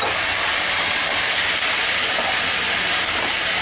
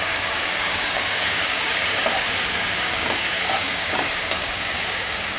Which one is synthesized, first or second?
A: second